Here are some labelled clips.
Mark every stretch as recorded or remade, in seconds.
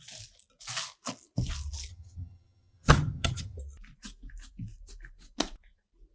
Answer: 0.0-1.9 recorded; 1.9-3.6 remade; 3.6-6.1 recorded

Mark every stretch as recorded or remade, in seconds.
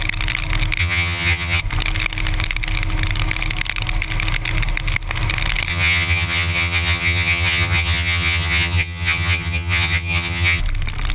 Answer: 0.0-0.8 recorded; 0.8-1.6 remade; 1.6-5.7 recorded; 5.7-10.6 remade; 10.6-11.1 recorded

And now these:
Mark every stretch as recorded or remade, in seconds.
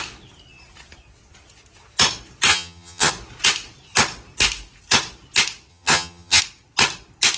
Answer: 0.0-2.5 recorded; 2.5-3.1 remade; 3.1-5.7 recorded; 5.7-6.4 remade; 6.4-7.4 recorded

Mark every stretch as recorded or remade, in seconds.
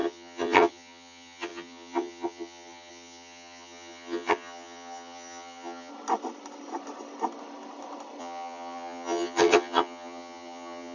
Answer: 0.0-5.9 remade; 5.9-8.2 recorded; 8.2-10.9 remade